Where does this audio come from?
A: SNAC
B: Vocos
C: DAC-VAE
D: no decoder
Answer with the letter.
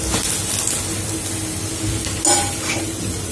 D